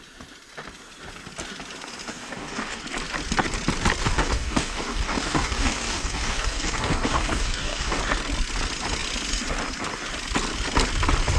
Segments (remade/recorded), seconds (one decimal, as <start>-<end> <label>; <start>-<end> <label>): 0.0-2.1 recorded; 2.1-2.8 remade; 2.8-4.0 recorded; 4.0-8.0 remade; 8.0-11.4 recorded